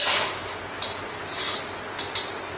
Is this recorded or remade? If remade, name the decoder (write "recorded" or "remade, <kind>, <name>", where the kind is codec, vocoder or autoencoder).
recorded